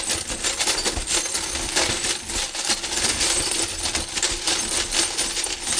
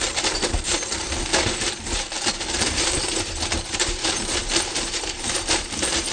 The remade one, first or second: second